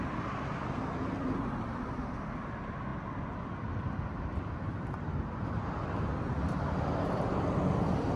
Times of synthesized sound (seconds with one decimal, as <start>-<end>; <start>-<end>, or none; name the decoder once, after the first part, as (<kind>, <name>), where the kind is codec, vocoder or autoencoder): none